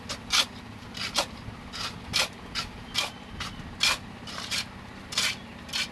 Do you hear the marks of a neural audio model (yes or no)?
no